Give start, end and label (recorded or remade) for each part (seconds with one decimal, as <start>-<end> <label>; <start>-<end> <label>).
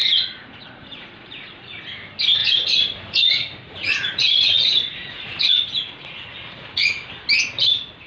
0.0-1.8 remade; 1.8-2.4 recorded; 2.4-7.1 remade; 7.1-8.1 recorded